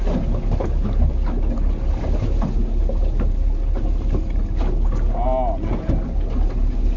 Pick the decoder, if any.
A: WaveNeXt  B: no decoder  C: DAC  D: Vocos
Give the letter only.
B